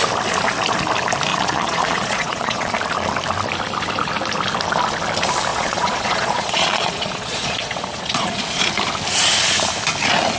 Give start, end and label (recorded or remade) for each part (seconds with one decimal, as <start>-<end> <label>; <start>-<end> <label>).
0.0-1.3 recorded; 1.3-2.7 remade; 2.7-5.5 recorded; 5.5-8.7 remade; 8.7-10.4 recorded